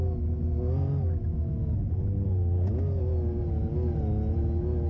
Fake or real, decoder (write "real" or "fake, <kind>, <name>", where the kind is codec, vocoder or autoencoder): real